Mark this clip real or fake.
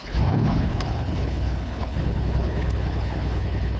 fake